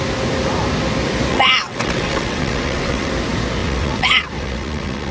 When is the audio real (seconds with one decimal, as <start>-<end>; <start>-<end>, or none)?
0.0-1.3; 3.1-3.6